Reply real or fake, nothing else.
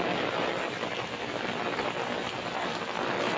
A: real